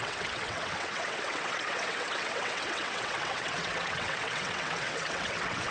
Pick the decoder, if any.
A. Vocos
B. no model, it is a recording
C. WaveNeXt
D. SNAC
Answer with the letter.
C